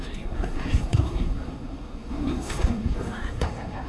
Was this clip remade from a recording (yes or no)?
yes